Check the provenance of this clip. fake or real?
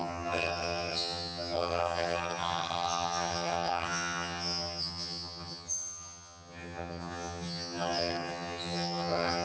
fake